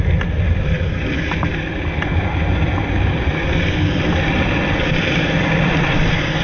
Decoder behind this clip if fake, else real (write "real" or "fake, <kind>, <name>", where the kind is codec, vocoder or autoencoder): real